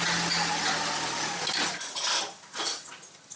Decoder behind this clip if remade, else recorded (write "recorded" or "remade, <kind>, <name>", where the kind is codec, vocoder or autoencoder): recorded